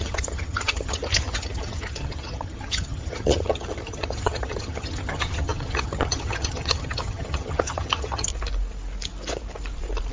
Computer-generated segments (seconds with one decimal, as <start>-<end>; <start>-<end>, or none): 0.0-8.3